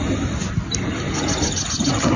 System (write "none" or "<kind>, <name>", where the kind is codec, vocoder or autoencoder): none